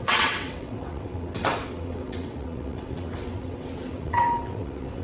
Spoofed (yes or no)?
yes